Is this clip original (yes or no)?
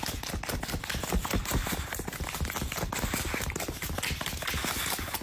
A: yes